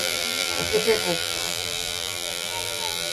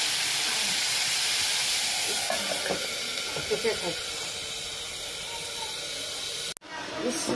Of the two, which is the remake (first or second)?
first